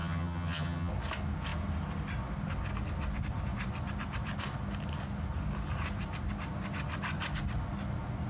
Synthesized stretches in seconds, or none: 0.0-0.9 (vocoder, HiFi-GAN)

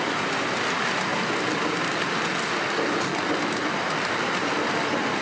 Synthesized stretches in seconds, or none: none

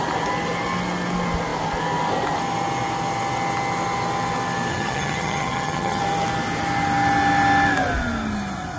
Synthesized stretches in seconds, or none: 4.7-6.0 (vocoder, HiFi-GAN)

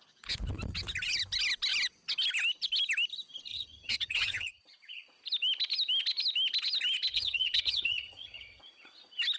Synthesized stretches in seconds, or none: 3.5-4.6 (vocoder, HiFi-GAN); 7.1-8.6

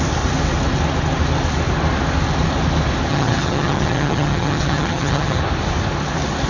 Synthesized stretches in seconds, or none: 3.1-5.4 (vocoder, HiFi-GAN)